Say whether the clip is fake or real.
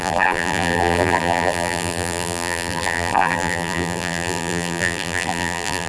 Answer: fake